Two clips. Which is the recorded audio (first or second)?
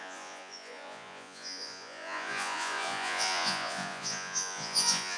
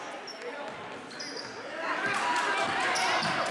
second